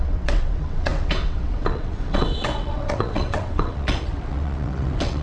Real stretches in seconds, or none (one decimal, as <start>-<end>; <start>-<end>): none